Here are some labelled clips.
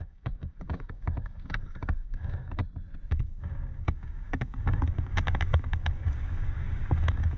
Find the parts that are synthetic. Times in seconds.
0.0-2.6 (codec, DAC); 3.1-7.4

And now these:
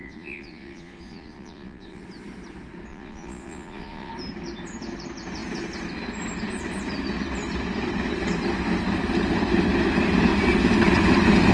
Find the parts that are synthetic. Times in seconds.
0.0-2.0 (vocoder, Vocos); 2.9-4.1

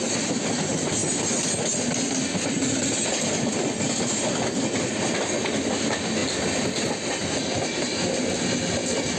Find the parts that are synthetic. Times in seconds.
none

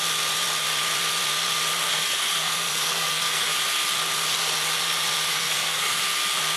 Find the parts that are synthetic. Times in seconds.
1.9-3.6 (codec, SNAC); 5.3-6.0

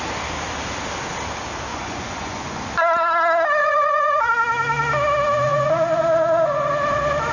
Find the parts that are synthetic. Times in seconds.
1.7-2.6 (vocoder, Vocos); 3.6-4.3; 5.5-6.7